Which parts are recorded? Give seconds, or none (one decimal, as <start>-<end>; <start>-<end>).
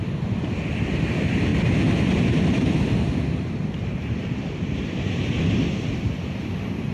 0.0-1.5; 5.4-6.9